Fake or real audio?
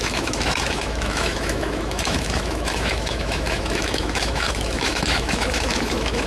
fake